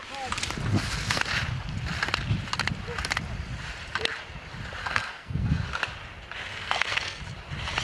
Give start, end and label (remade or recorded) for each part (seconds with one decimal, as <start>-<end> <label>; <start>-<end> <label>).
0.0-0.7 recorded; 0.7-1.2 remade; 1.2-4.8 recorded; 4.8-5.8 remade; 5.8-6.5 recorded; 6.5-7.2 remade; 7.2-7.8 recorded